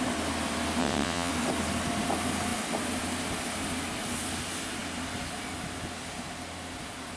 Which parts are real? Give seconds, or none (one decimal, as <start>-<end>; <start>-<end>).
0.0-0.8; 1.3-7.2